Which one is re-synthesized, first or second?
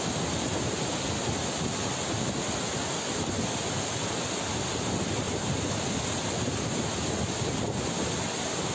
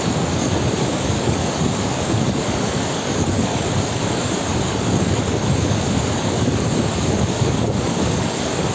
second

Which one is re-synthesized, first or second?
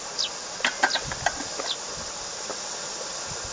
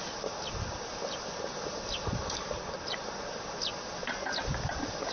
second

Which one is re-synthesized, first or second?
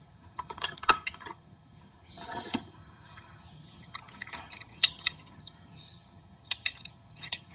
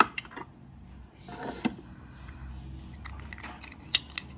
first